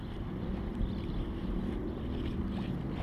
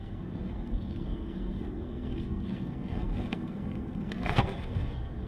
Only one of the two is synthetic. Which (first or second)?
second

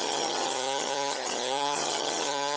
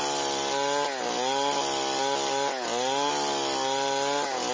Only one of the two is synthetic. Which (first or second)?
first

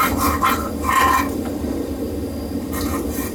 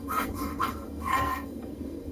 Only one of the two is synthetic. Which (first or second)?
second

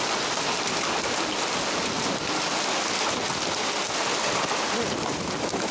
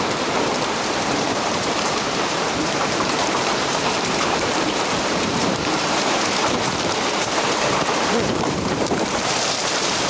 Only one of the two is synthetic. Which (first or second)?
second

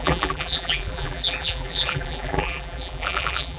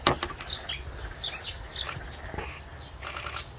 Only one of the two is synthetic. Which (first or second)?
first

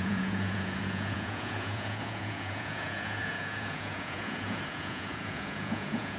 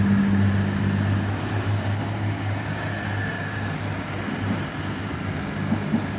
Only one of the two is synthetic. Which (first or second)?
first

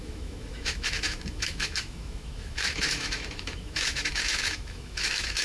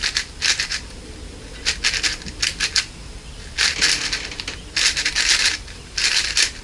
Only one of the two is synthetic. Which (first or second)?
first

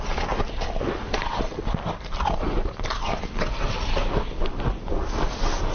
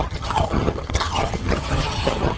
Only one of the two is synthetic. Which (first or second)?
second